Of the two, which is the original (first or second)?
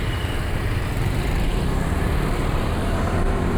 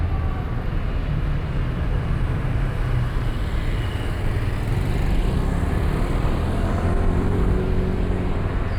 second